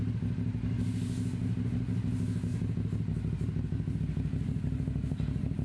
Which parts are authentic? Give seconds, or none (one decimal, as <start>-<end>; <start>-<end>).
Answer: 0.0-5.6